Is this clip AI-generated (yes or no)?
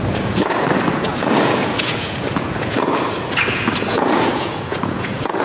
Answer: yes